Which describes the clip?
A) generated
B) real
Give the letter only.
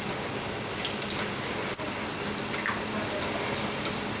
B